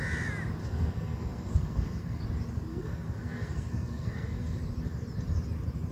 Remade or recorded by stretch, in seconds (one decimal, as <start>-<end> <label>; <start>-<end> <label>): 0.0-0.6 recorded; 0.6-2.2 remade; 2.2-2.7 recorded; 2.7-4.6 remade; 4.6-5.9 recorded